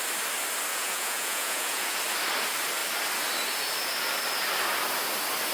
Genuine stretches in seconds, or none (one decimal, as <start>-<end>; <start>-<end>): 0.0-0.7; 2.0-5.5